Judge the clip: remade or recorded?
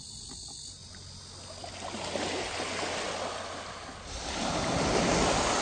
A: recorded